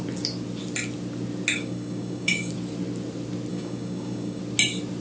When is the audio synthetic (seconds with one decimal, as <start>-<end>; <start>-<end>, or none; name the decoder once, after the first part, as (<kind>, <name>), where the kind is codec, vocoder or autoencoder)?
1.5-2.5 (codec, DAC); 3.5-4.4